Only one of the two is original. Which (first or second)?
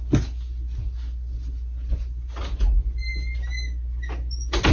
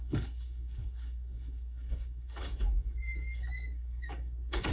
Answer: first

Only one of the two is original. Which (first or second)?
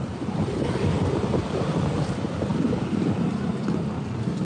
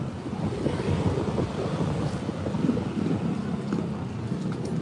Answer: second